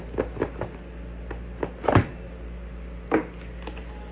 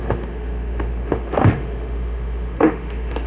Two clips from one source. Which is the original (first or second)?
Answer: first